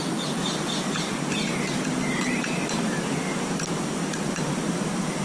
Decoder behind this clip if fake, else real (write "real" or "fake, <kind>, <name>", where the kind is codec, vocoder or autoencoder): real